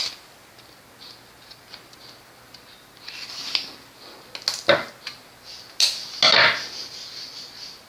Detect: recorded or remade recorded